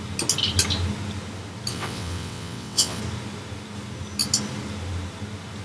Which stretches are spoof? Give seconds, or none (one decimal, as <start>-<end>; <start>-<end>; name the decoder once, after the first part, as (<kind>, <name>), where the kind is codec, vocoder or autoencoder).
1.7-3.0 (vocoder, WaveNeXt)